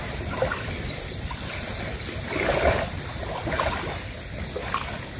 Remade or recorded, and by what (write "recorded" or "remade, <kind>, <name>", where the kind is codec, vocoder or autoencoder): recorded